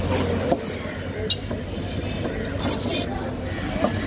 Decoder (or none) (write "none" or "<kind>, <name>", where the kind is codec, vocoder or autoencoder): none